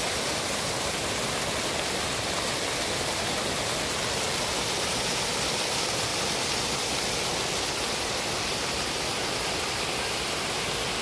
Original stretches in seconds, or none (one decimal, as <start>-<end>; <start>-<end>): 0.0-11.0

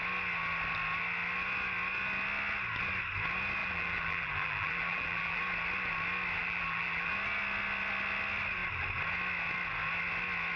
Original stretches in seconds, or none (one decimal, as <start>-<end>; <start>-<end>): 0.0-3.6; 5.4-6.4; 7.1-10.6

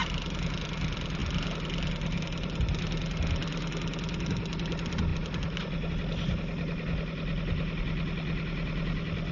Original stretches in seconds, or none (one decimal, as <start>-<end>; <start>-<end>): 0.0-9.3

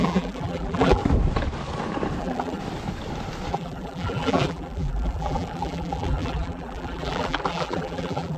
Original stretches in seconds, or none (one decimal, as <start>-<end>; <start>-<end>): 1.0-2.2; 2.6-3.5